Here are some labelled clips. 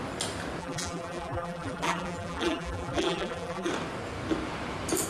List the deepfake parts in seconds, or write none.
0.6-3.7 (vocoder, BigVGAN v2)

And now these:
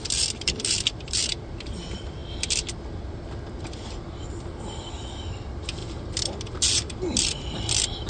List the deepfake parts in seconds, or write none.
0.0-2.2 (vocoder, BigVGAN v2); 5.1-5.8; 6.8-8.1

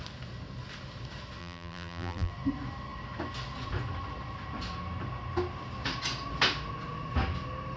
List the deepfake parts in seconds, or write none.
1.4-2.3 (vocoder, BigVGAN v2)